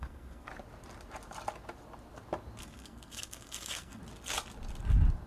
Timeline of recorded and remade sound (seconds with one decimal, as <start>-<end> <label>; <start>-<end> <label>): 0.0-0.5 remade; 0.5-2.6 recorded; 2.6-4.0 remade; 4.0-5.3 recorded